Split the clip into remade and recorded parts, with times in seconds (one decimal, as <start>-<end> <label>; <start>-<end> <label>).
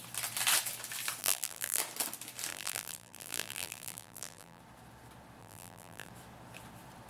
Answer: 0.0-1.2 recorded; 1.2-1.8 remade; 1.8-2.5 recorded; 2.5-4.6 remade; 4.6-5.4 recorded; 5.4-6.1 remade; 6.1-7.1 recorded